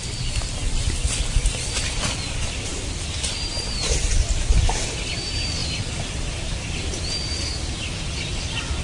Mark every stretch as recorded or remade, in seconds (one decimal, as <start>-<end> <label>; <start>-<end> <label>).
0.0-8.8 recorded